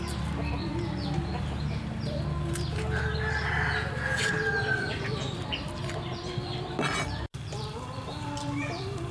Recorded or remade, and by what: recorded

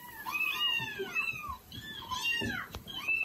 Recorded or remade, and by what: recorded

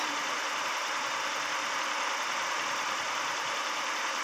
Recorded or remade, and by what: remade, vocoder, BigVGAN v2